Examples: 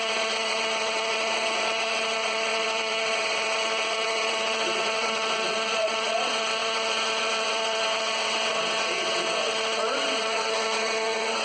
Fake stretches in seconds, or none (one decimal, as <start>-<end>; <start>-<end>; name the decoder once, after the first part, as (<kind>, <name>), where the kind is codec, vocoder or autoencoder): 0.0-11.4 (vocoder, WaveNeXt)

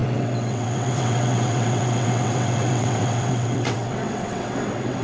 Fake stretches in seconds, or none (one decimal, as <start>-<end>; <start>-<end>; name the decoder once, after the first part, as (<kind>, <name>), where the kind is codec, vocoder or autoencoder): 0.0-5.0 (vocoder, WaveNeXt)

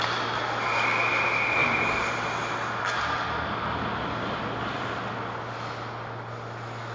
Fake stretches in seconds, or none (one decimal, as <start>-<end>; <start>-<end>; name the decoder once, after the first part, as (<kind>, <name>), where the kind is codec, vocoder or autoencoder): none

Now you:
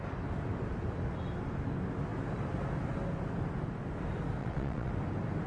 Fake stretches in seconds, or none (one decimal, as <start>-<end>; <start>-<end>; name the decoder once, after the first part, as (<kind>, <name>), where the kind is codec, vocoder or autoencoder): 4.4-4.9 (vocoder, WaveNeXt)